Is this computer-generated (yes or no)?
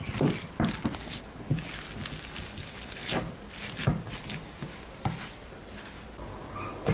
no